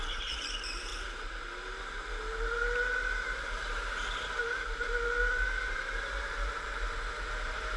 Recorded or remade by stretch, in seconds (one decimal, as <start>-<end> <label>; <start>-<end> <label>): 0.0-0.9 remade; 0.9-5.3 recorded; 5.3-7.8 remade